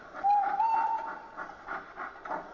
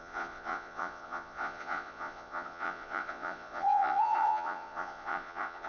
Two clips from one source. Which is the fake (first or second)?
second